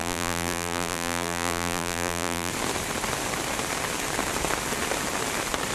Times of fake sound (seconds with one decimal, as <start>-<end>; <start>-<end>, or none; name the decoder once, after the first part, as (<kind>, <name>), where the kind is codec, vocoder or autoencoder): 0.0-2.5 (vocoder, BigVGAN v2)